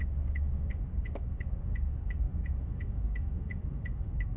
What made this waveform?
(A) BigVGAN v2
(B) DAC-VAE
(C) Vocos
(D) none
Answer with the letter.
B